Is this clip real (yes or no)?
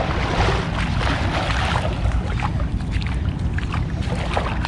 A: yes